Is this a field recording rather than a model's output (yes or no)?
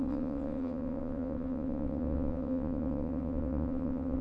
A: no